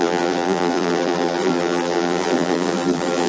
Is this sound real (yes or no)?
no